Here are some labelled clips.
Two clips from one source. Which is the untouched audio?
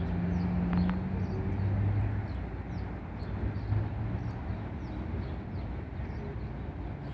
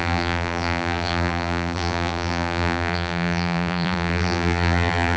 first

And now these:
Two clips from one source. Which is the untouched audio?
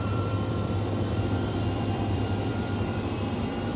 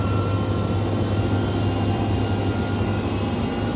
second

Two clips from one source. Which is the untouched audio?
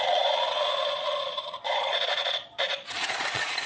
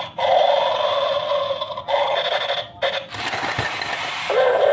second